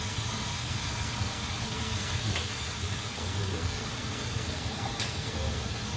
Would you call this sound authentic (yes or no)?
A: no